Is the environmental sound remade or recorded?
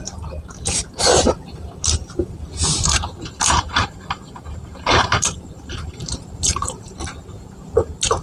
remade